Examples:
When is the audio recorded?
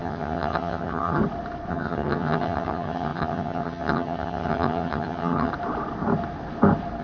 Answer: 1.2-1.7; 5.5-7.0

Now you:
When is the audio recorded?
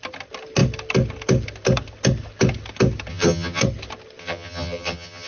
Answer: 0.0-3.1; 3.6-4.2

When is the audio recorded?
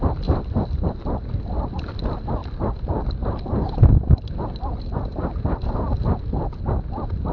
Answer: 0.0-7.3